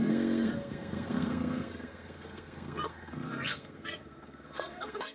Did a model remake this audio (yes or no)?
yes